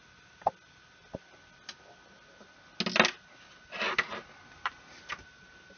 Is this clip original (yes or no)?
yes